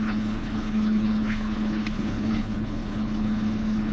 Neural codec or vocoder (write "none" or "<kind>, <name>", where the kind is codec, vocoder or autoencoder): codec, HILCodec